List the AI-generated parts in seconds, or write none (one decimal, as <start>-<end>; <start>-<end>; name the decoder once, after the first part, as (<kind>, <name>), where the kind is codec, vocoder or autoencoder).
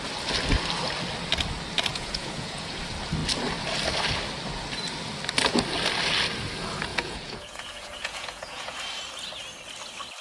1.9-2.8 (vocoder, Vocos); 6.9-8.8